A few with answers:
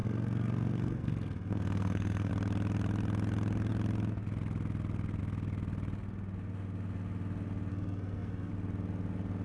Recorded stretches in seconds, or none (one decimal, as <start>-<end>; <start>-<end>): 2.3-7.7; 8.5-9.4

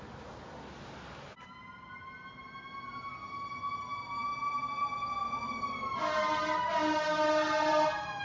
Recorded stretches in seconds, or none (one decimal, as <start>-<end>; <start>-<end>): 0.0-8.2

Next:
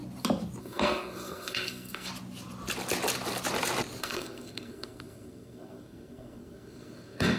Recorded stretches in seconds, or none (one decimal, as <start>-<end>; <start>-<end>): 0.0-0.6; 2.1-4.0